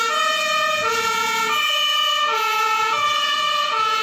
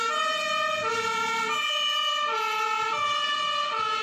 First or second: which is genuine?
second